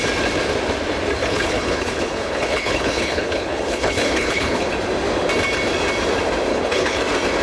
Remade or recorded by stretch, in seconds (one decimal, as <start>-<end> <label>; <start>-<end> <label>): 0.0-1.2 recorded; 1.2-4.7 remade; 4.7-6.5 recorded; 6.5-7.0 remade; 7.0-7.4 recorded